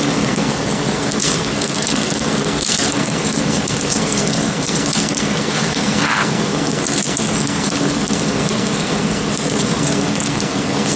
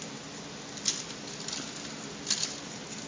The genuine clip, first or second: second